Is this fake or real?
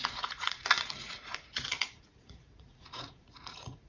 fake